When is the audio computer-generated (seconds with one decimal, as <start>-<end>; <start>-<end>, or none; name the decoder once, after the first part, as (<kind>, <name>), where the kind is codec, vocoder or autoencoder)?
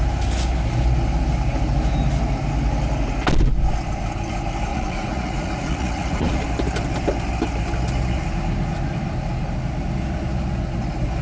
4.7-6.4 (vocoder, Vocos)